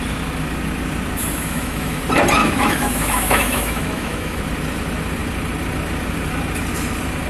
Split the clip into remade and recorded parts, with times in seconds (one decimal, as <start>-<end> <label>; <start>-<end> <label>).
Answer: 0.0-1.2 recorded; 1.2-2.0 remade; 2.0-2.4 recorded; 2.4-4.4 remade; 4.4-7.3 recorded